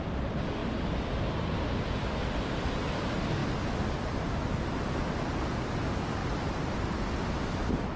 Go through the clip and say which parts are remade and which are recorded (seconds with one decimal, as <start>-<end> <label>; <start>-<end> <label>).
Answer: 0.0-6.2 recorded; 6.2-7.1 remade; 7.1-8.0 recorded